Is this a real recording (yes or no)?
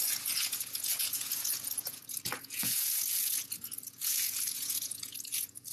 no